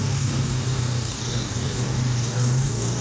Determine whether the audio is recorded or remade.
remade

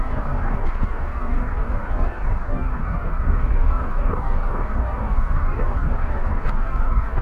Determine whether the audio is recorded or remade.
remade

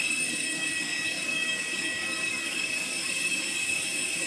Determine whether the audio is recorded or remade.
remade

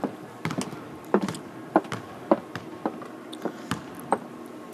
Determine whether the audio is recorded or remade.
recorded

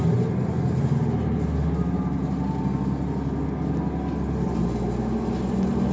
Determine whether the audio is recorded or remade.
recorded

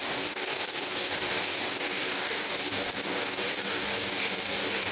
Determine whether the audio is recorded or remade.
remade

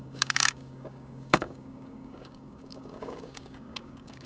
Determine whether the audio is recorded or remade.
remade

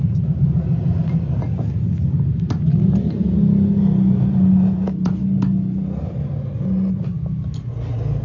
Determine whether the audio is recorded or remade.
recorded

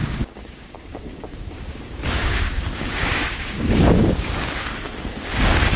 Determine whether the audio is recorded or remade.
remade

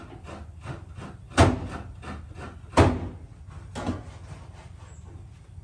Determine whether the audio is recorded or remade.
recorded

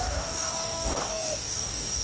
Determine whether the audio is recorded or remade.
remade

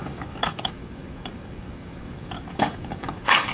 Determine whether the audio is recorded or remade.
remade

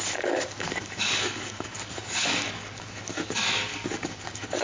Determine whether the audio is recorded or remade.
remade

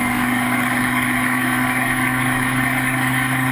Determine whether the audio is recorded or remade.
remade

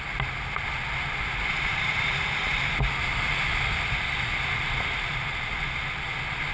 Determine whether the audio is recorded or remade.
recorded